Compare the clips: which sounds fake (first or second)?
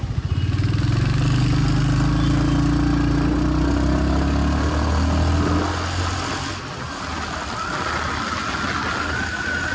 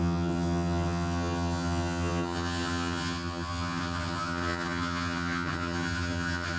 second